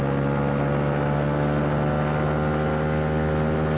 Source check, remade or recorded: recorded